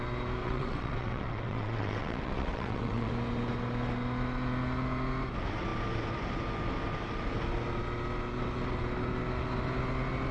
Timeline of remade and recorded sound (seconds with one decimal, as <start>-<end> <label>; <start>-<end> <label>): 0.0-0.4 recorded; 0.4-3.1 remade; 3.1-10.3 recorded